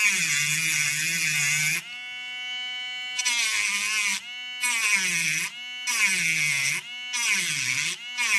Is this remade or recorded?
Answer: recorded